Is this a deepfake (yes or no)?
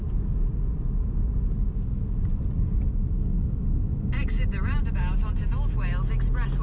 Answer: no